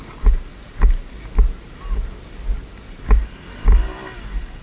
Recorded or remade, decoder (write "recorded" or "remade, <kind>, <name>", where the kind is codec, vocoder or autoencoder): recorded